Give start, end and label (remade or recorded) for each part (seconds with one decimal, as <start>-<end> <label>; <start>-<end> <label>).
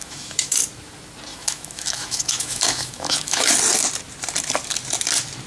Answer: 0.0-0.6 remade; 0.6-1.3 recorded; 1.3-3.5 remade; 3.5-5.5 recorded